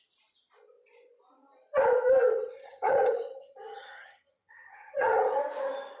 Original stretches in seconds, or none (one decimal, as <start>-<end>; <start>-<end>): 0.0-2.3; 5.4-6.0